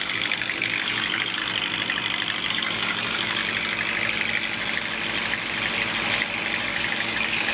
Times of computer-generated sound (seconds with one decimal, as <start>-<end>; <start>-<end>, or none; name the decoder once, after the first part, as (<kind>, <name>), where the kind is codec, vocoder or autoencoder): 0.0-1.4 (codec, DAC); 2.5-3.4; 6.6-7.5